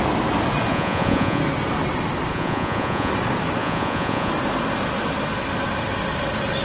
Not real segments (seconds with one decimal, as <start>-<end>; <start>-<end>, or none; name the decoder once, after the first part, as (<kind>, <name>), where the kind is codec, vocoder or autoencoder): 0.7-1.4 (vocoder, Vocos); 2.3-3.1; 3.6-4.3